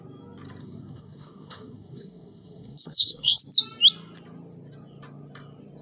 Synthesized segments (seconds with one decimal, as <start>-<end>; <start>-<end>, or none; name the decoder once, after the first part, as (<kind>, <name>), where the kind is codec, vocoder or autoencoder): 0.6-3.4 (codec, SNAC)

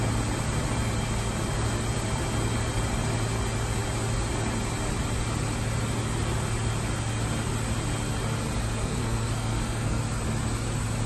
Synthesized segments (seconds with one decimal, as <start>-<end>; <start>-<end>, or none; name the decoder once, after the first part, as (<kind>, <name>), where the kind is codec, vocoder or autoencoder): 8.8-10.0 (codec, SNAC)

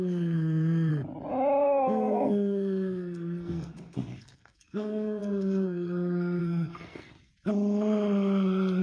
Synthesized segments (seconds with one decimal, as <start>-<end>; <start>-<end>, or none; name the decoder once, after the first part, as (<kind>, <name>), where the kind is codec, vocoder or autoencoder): 0.0-0.9 (codec, SNAC); 1.6-7.3

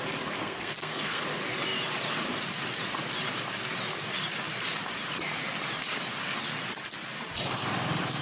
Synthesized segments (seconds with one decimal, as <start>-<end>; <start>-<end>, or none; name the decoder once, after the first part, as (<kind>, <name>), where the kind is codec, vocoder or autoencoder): 0.4-1.2 (codec, SNAC)

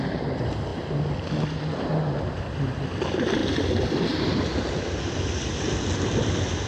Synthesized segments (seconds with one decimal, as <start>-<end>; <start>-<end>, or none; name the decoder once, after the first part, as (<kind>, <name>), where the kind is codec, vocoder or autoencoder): none

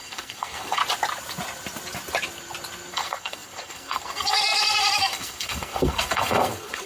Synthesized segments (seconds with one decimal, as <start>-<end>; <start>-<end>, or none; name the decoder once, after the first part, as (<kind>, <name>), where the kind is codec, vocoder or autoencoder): 0.0-0.8 (codec, SNAC); 2.9-6.9

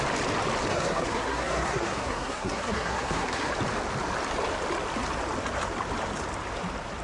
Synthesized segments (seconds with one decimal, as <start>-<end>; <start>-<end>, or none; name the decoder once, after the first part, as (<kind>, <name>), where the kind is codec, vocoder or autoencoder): 0.7-3.5 (codec, SNAC)